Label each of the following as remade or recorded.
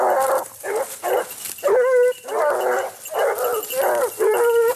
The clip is recorded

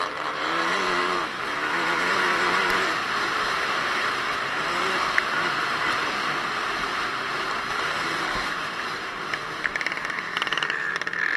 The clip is remade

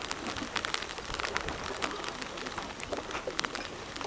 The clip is recorded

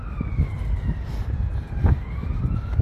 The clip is recorded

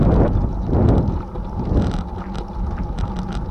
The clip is recorded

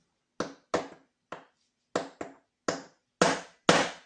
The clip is recorded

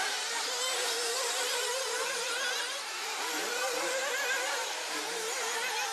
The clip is remade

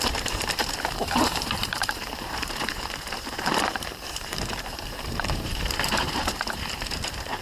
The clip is remade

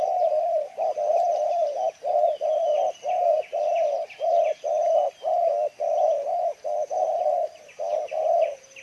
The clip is remade